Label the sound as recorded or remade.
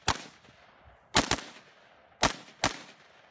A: recorded